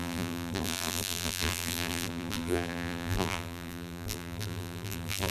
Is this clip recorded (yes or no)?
no